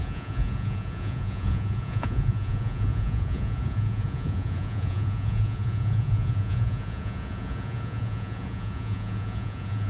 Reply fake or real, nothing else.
fake